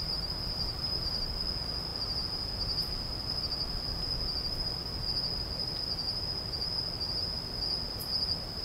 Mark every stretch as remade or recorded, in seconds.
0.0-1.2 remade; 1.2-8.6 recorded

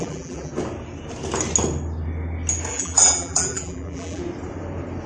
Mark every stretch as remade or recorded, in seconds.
0.0-0.5 remade; 0.5-2.7 recorded; 2.7-4.2 remade; 4.2-5.1 recorded

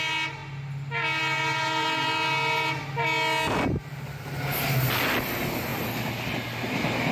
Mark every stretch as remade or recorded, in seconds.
0.0-7.1 recorded

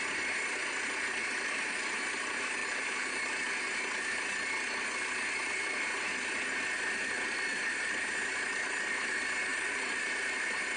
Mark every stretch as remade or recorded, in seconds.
0.0-2.6 recorded; 2.6-3.2 remade; 3.2-9.5 recorded; 9.5-10.1 remade; 10.1-10.8 recorded

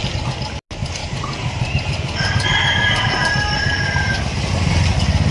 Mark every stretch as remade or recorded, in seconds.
0.0-1.0 recorded; 1.0-4.2 remade; 4.2-5.3 recorded